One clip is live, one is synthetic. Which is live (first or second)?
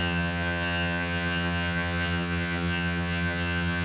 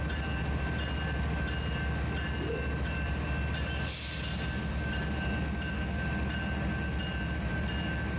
second